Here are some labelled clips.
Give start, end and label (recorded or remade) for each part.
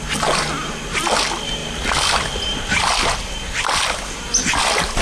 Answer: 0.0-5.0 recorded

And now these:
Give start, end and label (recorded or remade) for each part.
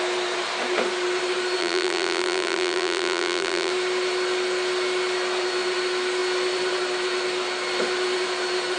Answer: 0.0-1.6 recorded; 1.6-3.7 remade; 3.7-8.8 recorded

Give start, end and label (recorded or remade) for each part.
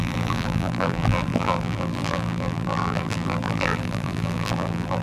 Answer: 0.0-5.0 remade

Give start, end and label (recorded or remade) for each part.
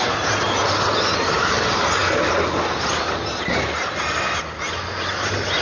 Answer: 0.0-5.6 recorded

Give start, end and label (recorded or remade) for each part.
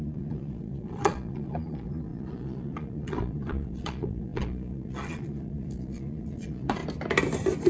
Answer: 0.0-6.8 remade; 6.8-7.7 recorded